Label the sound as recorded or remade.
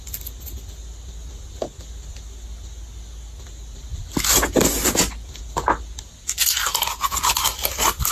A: recorded